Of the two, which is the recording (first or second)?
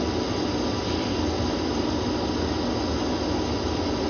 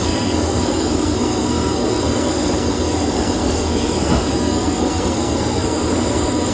first